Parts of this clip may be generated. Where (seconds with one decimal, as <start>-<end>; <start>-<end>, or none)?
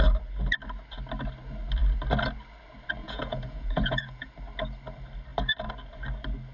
3.0-4.3